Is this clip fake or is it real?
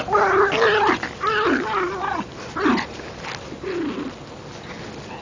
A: real